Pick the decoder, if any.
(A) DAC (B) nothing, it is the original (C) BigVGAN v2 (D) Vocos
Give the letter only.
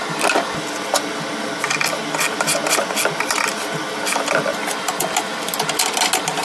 B